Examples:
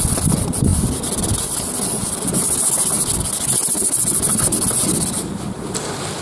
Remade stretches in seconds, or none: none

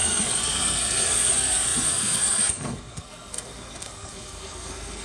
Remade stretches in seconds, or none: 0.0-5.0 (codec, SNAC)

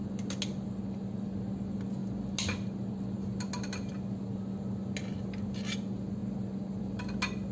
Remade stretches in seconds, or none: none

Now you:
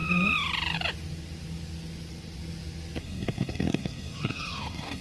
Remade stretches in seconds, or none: 3.0-5.0 (codec, SNAC)

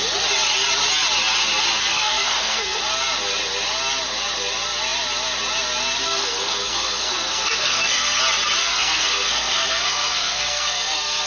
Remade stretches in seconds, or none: 1.9-2.8 (codec, SNAC); 6.0-8.2; 8.6-11.3

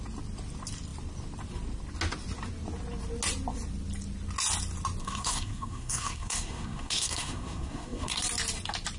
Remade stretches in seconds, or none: 5.0-8.2 (codec, SNAC)